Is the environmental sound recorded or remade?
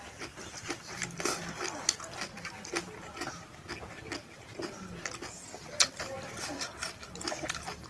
recorded